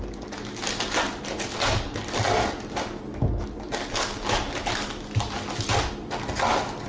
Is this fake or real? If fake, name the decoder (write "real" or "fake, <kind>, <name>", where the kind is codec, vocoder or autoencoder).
real